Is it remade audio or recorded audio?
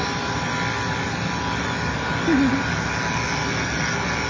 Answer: recorded